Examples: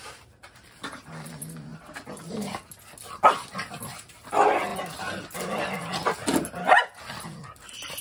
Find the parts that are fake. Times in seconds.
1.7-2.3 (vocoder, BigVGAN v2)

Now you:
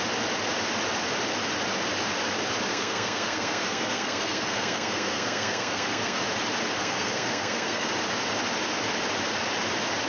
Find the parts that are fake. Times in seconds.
2.7-6.2 (codec, SNAC); 6.8-7.9

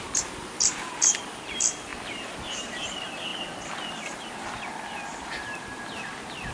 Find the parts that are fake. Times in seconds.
none